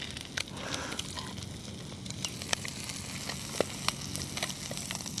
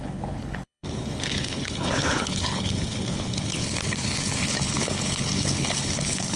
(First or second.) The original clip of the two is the first